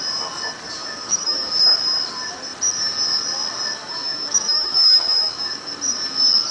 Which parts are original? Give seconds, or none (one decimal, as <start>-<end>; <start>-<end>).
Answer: 0.0-0.8; 1.5-3.8; 5.7-6.5